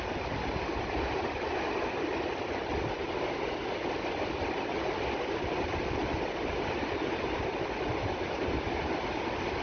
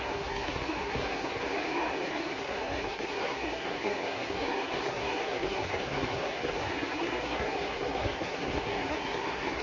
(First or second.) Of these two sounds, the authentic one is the first